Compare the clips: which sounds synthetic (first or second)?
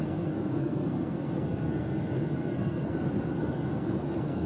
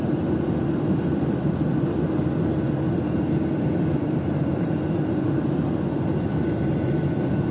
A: first